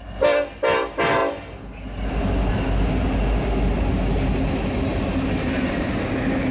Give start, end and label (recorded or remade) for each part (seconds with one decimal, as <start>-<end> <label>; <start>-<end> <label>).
0.0-4.9 recorded; 4.9-5.8 remade; 5.8-6.5 recorded